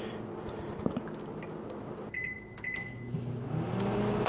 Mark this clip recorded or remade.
recorded